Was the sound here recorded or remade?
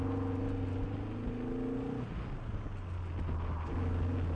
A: recorded